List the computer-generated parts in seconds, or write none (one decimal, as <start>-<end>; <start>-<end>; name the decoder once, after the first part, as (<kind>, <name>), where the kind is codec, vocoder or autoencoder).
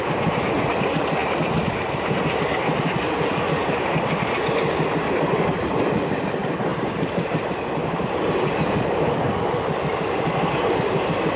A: none